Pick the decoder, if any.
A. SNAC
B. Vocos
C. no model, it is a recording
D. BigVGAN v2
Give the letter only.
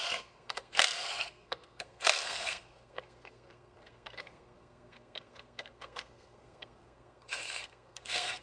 A